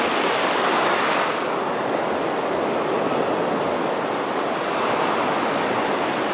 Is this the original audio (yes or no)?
yes